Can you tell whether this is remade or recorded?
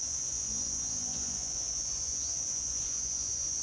remade